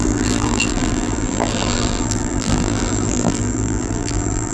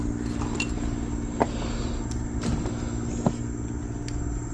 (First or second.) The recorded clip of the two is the second